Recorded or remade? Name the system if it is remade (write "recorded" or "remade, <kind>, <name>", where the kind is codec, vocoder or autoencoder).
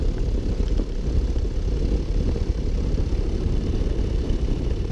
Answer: recorded